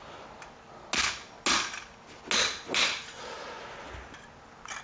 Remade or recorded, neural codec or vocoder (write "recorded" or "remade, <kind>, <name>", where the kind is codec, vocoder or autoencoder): recorded